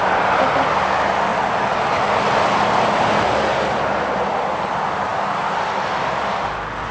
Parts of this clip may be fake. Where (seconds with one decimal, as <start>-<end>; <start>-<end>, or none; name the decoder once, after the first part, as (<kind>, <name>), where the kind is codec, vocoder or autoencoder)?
none